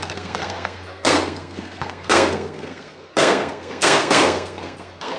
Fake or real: fake